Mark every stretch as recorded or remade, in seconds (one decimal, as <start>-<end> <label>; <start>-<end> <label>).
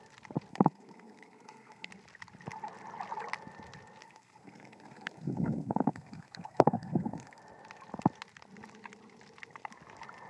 0.0-0.5 recorded; 0.5-1.9 remade; 1.9-4.0 recorded; 4.0-7.4 remade; 7.4-10.3 recorded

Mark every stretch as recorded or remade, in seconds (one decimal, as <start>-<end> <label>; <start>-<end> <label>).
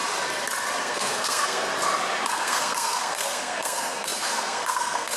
0.0-0.8 recorded; 0.8-1.7 remade; 1.7-2.3 recorded; 2.3-5.2 remade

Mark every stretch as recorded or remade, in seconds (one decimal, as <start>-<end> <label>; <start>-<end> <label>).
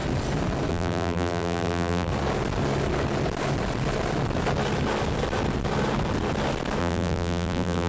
0.0-0.7 recorded; 0.7-2.1 remade; 2.1-6.8 recorded; 6.8-7.9 remade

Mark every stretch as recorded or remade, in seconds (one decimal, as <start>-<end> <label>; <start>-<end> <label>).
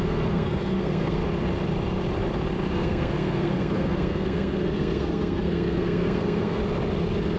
0.0-1.2 remade; 1.2-2.7 recorded; 2.7-6.6 remade; 6.6-7.4 recorded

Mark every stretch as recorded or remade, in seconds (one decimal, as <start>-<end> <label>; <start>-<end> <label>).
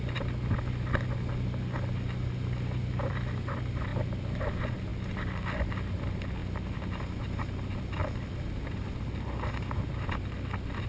0.0-10.9 recorded